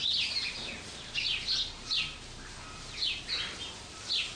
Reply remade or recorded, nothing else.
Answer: recorded